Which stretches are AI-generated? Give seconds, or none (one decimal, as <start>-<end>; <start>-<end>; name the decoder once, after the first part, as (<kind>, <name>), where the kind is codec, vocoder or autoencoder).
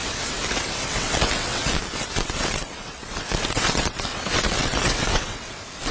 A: 0.0-1.7 (vocoder, WaveNeXt); 2.2-5.9